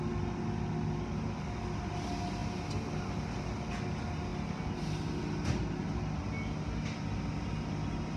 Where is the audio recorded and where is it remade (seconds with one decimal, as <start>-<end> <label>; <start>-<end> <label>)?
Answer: 0.0-8.2 recorded